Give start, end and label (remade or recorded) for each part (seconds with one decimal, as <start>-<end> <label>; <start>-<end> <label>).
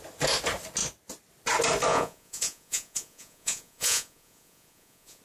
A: 0.0-1.9 recorded; 1.9-5.2 remade